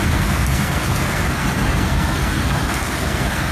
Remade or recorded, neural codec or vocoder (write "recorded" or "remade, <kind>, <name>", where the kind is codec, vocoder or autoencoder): remade, codec, SNAC